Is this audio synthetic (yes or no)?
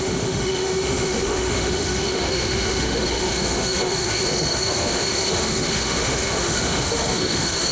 yes